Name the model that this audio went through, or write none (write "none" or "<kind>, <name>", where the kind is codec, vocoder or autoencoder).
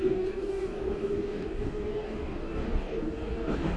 codec, DAC